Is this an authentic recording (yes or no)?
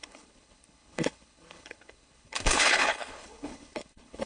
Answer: no